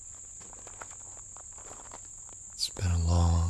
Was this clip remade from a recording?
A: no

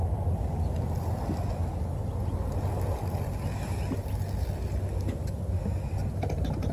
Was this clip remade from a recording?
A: no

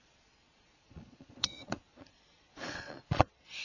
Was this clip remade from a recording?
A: yes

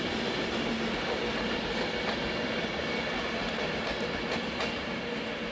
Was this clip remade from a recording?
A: no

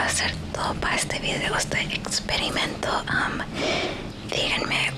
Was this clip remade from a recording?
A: no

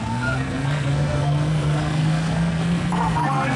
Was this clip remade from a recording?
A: yes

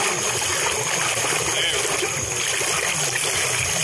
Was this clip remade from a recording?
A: no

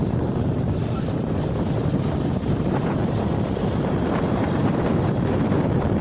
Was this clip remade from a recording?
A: yes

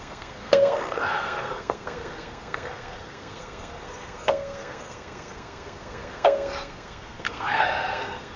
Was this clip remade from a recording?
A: yes